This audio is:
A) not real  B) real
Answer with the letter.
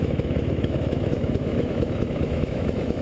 A